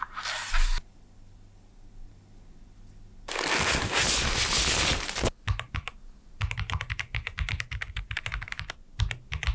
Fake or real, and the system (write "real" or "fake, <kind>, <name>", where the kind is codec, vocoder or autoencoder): real